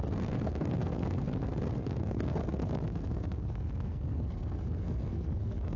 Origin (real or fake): fake